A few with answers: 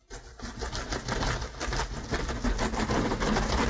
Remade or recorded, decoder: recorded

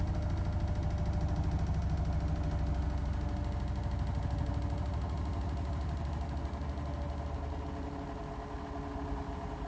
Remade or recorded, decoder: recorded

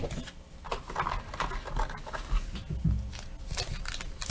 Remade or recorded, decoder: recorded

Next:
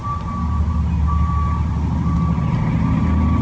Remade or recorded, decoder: recorded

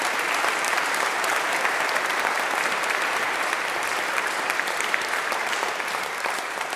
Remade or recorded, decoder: remade, vocoder, BigVGAN v2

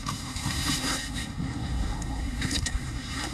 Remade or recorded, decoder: remade, codec, SNAC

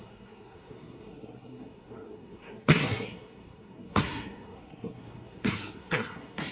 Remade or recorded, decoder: remade, codec, SNAC